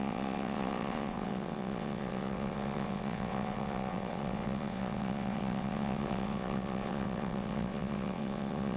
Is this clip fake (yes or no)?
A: yes